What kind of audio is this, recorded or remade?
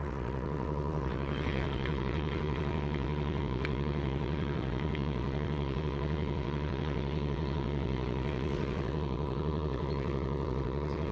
remade